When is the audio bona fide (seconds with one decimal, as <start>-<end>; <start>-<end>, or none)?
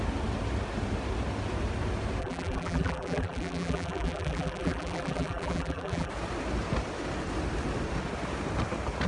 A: 0.0-2.2; 6.1-9.1